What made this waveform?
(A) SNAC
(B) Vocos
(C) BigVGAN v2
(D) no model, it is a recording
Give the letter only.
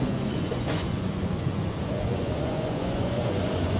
B